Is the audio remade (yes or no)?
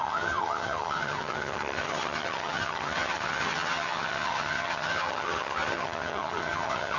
yes